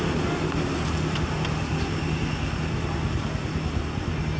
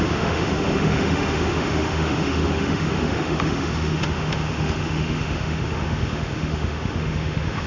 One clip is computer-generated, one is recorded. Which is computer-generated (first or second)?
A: second